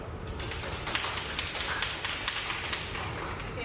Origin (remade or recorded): recorded